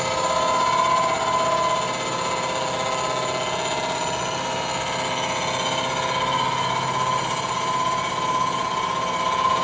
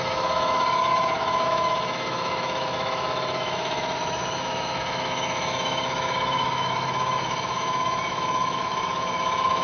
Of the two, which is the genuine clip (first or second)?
first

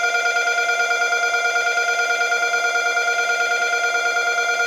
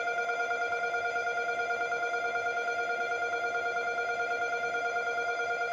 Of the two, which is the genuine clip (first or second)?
first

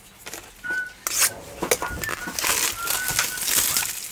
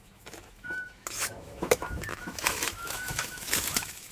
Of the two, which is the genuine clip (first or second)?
first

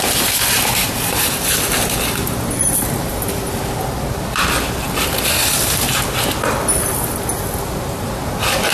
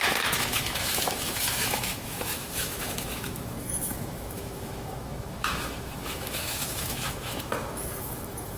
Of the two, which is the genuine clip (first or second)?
first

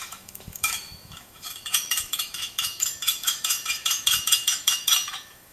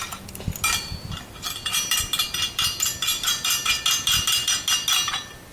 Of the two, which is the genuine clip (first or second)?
second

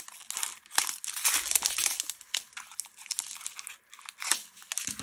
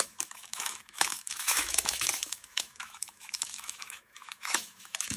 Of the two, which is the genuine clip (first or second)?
first